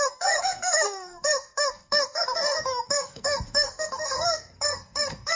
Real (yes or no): no